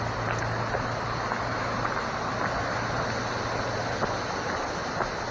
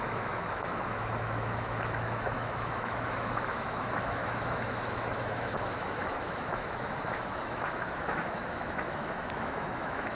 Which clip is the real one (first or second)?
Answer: first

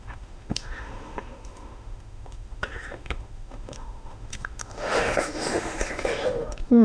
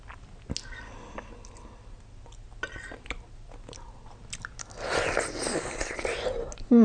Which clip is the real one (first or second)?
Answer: second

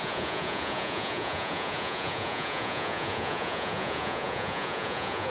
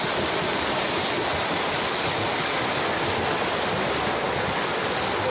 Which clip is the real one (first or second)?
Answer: second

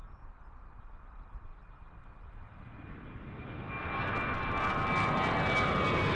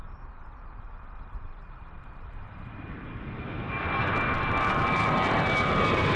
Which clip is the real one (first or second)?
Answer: first